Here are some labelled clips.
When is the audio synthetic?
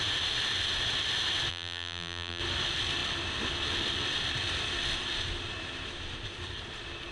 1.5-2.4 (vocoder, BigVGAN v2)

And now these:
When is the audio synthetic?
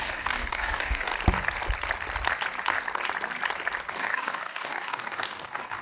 0.0-1.1 (codec, DAC); 3.9-5.8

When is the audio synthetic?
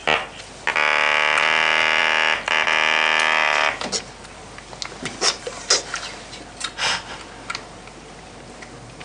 none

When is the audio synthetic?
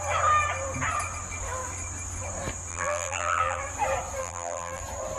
2.7-3.6 (vocoder, BigVGAN v2); 4.2-4.8